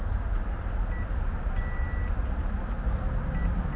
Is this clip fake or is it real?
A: real